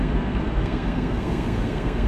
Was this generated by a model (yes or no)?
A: yes